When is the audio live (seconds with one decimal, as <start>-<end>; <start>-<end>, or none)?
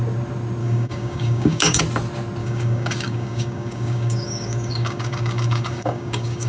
0.0-0.6; 1.8-2.4